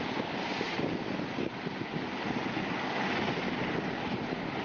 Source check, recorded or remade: recorded